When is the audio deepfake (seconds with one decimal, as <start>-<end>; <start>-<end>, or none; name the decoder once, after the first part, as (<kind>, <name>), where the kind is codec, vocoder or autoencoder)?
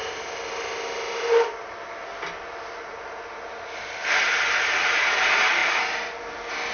none